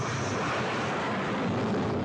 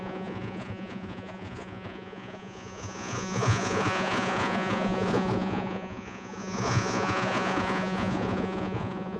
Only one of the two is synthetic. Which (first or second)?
second